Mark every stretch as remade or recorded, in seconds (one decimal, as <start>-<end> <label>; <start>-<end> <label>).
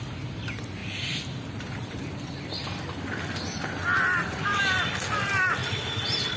0.0-0.8 recorded; 0.8-4.6 remade; 4.6-5.6 recorded; 5.6-6.4 remade